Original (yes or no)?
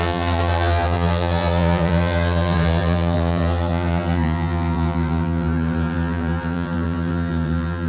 no